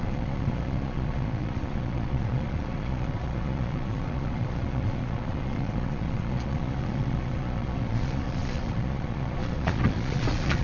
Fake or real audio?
fake